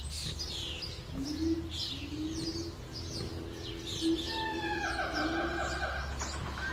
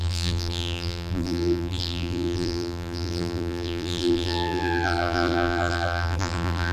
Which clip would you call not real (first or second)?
second